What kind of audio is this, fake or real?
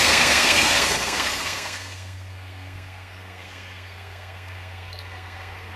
fake